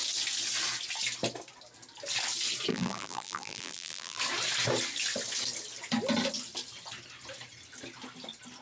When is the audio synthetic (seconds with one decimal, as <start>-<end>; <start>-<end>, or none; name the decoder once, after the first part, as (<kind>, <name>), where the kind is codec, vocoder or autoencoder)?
2.7-4.2 (vocoder, BigVGAN v2)